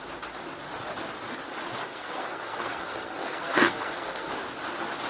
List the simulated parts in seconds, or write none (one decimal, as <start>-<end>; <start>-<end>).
1.8-4.3